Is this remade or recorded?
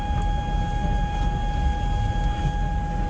recorded